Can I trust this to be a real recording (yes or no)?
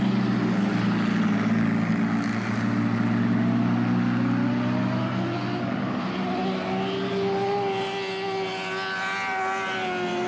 yes